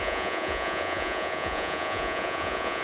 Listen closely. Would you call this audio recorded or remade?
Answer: remade